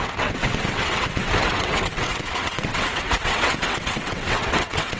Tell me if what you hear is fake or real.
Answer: fake